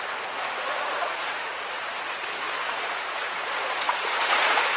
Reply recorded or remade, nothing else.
remade